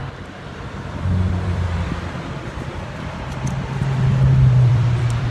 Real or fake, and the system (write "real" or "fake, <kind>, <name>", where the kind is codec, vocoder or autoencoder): fake, vocoder, BigVGAN v2